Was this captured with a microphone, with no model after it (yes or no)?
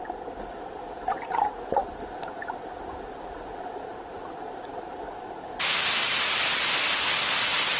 yes